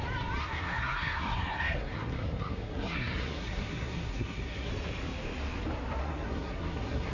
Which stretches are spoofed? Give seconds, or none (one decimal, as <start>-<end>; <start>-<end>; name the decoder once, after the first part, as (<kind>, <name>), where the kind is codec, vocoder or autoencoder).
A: 0.4-4.7 (codec, SNAC); 6.0-7.1